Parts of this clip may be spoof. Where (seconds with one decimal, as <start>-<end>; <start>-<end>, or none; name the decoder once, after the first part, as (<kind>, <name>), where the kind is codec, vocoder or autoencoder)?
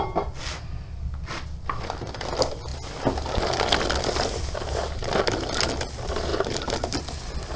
none